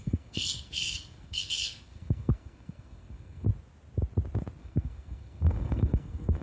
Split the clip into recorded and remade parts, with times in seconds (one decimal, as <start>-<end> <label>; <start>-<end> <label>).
0.0-3.5 remade; 3.5-4.6 recorded; 4.6-6.4 remade